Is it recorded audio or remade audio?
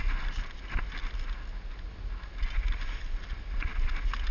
recorded